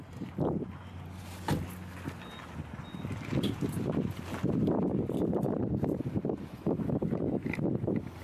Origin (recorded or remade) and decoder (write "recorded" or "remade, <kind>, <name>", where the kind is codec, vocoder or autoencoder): recorded